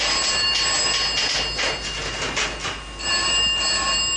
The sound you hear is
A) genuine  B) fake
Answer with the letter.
A